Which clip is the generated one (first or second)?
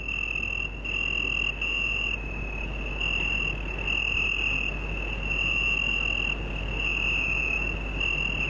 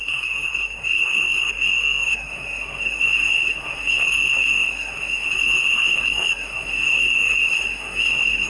second